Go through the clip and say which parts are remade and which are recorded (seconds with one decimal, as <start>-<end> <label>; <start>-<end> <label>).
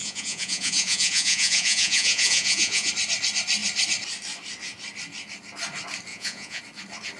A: 0.0-2.9 remade; 2.9-6.1 recorded; 6.1-6.6 remade; 6.6-7.2 recorded